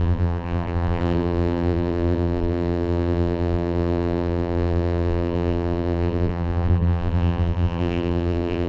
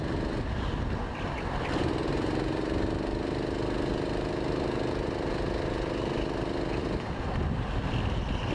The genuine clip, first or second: second